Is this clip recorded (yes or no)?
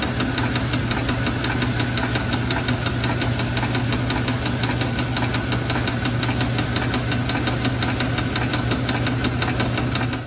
yes